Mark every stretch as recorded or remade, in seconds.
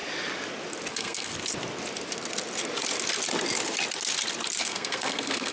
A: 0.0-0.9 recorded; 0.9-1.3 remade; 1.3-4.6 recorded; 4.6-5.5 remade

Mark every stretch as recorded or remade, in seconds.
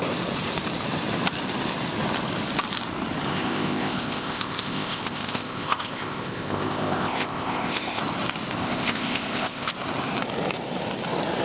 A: 0.0-3.3 recorded; 3.3-8.0 remade; 8.0-8.6 recorded; 8.6-9.7 remade; 9.7-11.4 recorded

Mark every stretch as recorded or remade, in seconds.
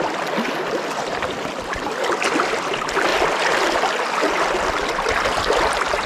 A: 0.0-6.1 recorded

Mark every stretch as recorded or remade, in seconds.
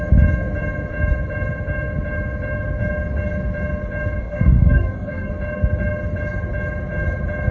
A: 0.0-4.2 recorded; 4.2-5.3 remade; 5.3-7.5 recorded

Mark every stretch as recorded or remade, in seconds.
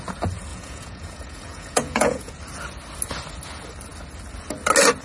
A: 0.0-0.5 recorded; 0.5-2.3 remade; 2.3-5.0 recorded